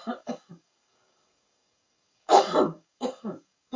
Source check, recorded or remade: remade